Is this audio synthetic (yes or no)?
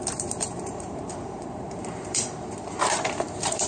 yes